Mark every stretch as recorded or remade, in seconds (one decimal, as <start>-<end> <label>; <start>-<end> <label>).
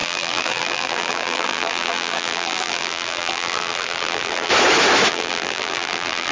0.0-4.5 remade; 4.5-5.1 recorded; 5.1-6.3 remade